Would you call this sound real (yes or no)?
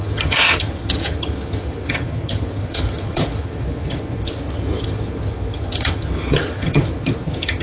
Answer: no